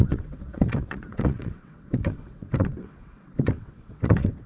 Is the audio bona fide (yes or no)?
no